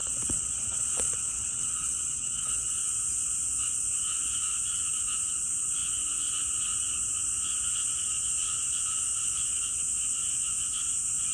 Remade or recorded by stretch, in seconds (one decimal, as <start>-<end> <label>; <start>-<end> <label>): 0.0-2.7 remade; 2.7-11.3 recorded